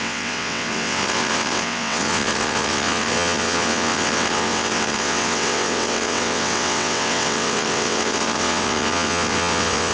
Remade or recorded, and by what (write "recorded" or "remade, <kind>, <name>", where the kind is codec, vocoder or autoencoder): remade, vocoder, WaveNeXt